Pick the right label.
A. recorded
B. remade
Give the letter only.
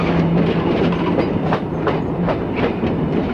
B